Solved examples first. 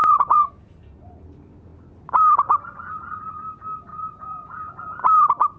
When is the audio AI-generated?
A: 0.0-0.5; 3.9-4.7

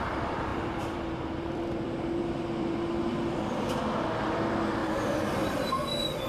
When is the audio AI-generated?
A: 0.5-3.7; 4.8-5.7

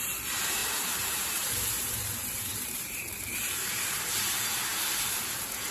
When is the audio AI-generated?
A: 0.0-5.7

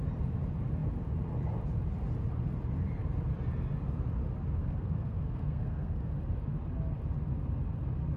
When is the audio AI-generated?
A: 4.6-6.1